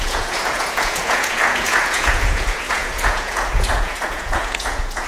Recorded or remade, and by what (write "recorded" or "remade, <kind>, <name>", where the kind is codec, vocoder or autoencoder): remade, vocoder, Vocos